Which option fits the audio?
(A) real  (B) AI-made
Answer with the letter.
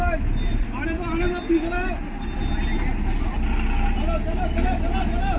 A